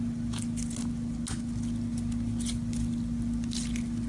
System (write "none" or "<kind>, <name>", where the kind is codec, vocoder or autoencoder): none